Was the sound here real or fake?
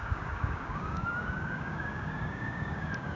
fake